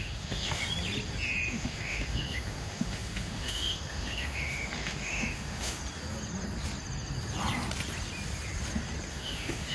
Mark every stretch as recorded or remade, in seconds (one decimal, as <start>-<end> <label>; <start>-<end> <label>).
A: 0.0-0.6 remade; 0.6-1.5 recorded; 1.5-5.8 remade; 5.8-9.1 recorded; 9.1-9.7 remade